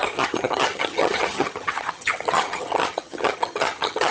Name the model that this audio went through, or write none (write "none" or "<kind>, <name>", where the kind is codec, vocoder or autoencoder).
vocoder, HiFi-GAN